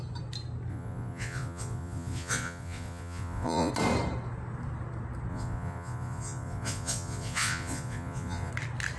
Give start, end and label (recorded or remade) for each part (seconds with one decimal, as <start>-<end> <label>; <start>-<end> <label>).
0.0-0.7 recorded; 0.7-3.7 remade; 3.7-5.3 recorded; 5.3-8.5 remade; 8.5-9.0 recorded